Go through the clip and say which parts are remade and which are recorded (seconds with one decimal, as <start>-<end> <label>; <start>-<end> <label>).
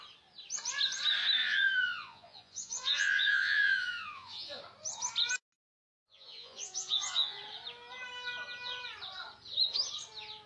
0.0-1.4 recorded; 1.4-4.6 remade; 4.6-5.8 recorded; 5.8-7.4 remade; 7.4-10.5 recorded